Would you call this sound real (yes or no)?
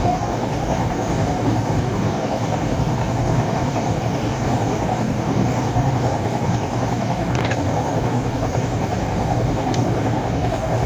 no